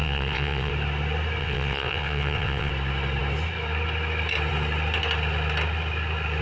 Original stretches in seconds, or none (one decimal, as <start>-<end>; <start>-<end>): 0.7-1.4; 2.7-6.4